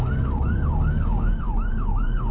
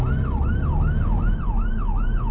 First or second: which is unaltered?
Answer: second